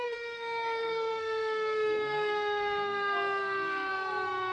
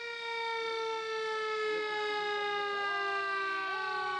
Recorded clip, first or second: second